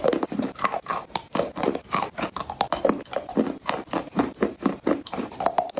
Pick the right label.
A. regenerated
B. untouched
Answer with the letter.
A